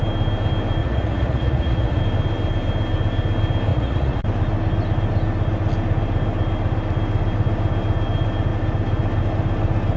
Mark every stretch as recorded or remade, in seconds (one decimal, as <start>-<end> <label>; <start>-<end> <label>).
0.0-0.8 recorded; 0.8-2.0 remade; 2.0-3.7 recorded; 3.7-4.2 remade; 4.2-10.0 recorded